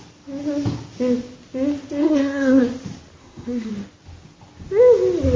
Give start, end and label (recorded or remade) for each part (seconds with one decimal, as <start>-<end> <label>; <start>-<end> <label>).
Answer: 0.0-2.0 recorded; 2.0-2.6 remade; 2.6-3.2 recorded; 3.2-3.7 remade; 3.7-5.4 recorded